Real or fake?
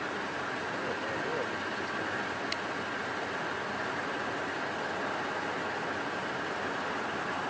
real